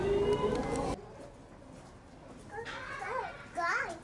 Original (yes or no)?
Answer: yes